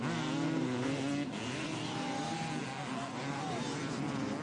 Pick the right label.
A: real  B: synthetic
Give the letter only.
A